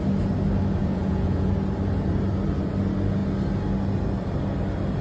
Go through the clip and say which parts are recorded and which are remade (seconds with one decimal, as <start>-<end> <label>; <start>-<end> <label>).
0.0-0.8 recorded; 0.8-1.5 remade; 1.5-5.0 recorded

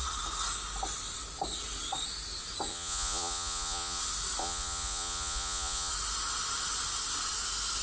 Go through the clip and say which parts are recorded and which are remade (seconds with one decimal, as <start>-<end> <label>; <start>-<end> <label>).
0.0-2.7 recorded; 2.7-4.0 remade; 4.0-4.4 recorded; 4.4-5.9 remade; 5.9-7.8 recorded

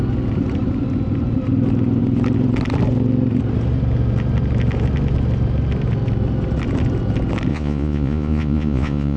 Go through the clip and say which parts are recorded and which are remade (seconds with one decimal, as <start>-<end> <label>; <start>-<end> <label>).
0.0-7.5 recorded; 7.5-9.2 remade

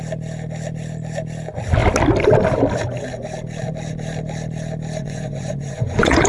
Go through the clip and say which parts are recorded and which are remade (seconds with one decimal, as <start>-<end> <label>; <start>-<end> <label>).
0.0-5.0 recorded; 5.0-6.3 remade